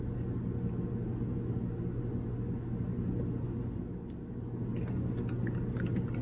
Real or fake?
real